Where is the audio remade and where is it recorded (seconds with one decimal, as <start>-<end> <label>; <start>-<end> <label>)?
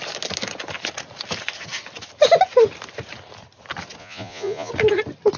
0.0-4.0 recorded; 4.0-4.7 remade; 4.7-5.4 recorded